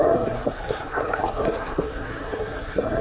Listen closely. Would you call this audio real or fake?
fake